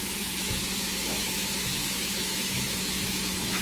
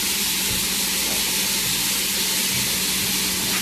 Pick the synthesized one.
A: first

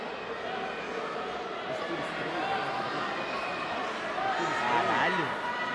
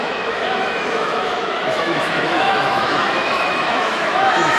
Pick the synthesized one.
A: second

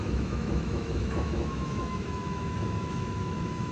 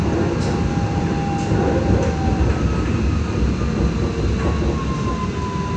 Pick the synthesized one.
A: first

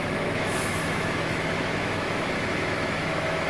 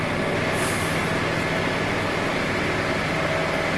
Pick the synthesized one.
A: first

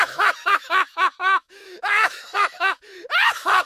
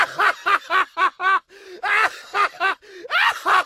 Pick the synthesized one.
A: first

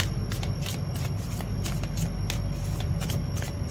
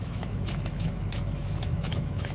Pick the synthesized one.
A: second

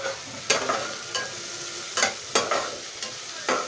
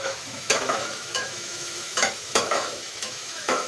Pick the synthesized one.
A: second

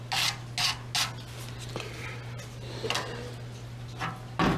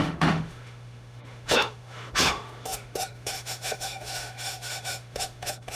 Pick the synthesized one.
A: second